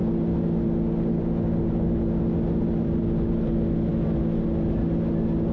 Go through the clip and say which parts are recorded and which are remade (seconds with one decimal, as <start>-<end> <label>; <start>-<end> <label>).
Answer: 0.0-5.5 recorded